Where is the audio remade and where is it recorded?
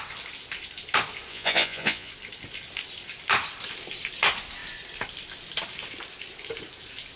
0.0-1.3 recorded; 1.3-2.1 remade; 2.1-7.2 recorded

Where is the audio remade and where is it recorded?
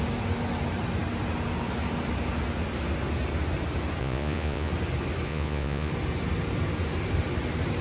0.0-4.0 recorded; 4.0-4.7 remade; 4.7-5.3 recorded; 5.3-5.9 remade; 5.9-7.8 recorded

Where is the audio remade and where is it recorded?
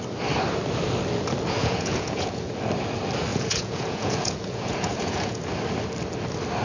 0.0-1.6 recorded; 1.6-2.5 remade; 2.5-3.3 recorded; 3.3-5.4 remade; 5.4-6.6 recorded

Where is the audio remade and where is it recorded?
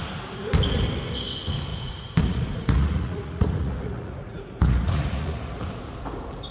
0.0-1.7 recorded; 1.7-5.6 remade; 5.6-6.5 recorded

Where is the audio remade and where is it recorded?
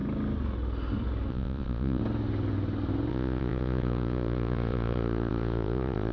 0.0-1.3 recorded; 1.3-2.0 remade; 2.0-3.1 recorded; 3.1-6.1 remade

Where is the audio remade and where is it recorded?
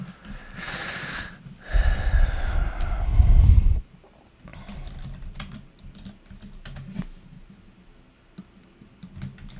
0.0-9.6 recorded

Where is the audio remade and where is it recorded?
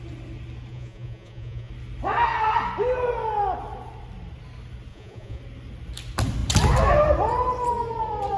0.0-0.7 recorded; 0.7-1.7 remade; 1.7-4.9 recorded; 4.9-5.4 remade; 5.4-8.4 recorded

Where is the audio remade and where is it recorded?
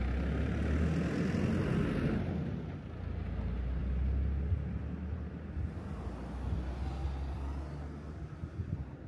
0.0-9.1 recorded